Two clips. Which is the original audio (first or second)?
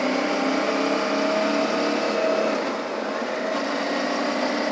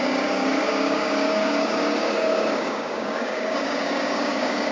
first